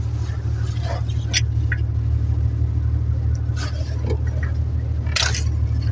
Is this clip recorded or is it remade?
recorded